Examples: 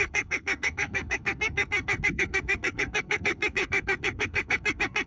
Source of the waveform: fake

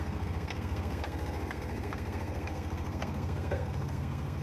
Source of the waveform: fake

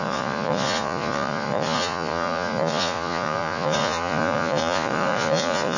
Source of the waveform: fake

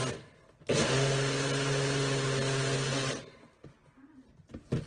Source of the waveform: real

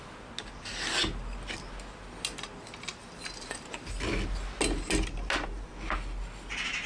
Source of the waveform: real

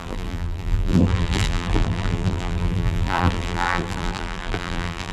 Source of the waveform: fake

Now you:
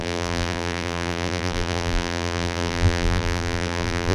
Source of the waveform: fake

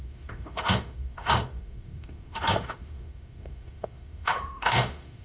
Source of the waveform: fake